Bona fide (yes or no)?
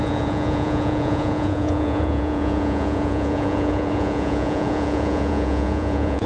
no